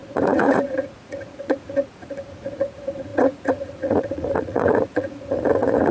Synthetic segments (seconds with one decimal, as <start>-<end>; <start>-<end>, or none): 0.0-5.9